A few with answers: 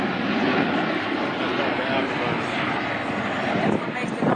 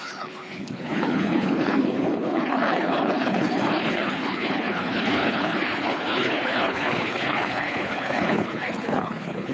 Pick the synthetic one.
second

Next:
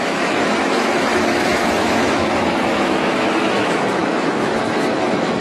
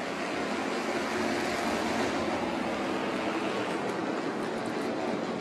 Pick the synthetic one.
first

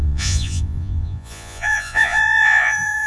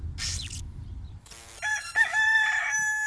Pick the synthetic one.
first